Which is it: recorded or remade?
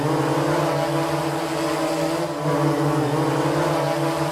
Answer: recorded